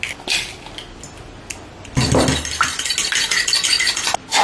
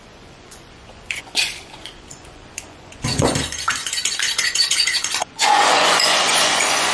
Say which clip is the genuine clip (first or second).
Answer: first